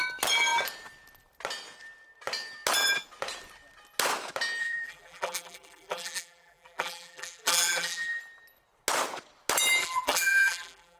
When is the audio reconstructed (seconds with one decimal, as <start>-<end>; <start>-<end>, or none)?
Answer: 4.6-8.2; 9.8-11.0